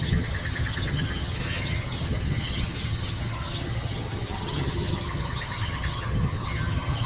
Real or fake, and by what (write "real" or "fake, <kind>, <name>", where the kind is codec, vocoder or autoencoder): fake, vocoder, HiFi-GAN